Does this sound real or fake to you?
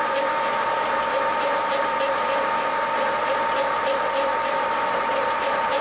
real